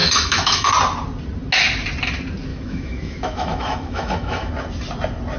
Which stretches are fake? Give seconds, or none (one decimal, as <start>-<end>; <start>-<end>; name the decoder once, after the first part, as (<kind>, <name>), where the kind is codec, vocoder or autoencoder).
0.0-0.7 (autoencoder, DAC-VAE); 2.5-4.5